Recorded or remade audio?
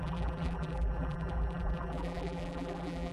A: remade